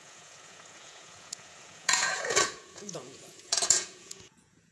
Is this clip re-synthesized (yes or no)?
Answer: yes